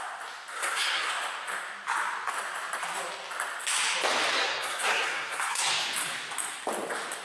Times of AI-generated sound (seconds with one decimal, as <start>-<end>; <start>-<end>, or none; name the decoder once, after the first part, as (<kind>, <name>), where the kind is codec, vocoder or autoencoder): 0.5-1.1 (codec, SNAC); 4.3-5.7